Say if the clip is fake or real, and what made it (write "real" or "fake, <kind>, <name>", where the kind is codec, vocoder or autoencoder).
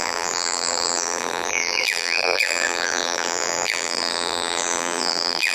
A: fake, vocoder, BigVGAN v2